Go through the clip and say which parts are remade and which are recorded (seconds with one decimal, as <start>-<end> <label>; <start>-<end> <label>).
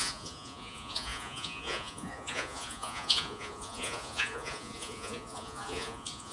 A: 0.0-6.3 remade